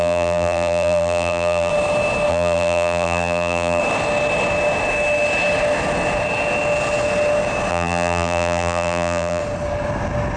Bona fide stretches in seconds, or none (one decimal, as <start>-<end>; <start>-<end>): 1.7-2.3; 3.8-7.7; 9.4-10.4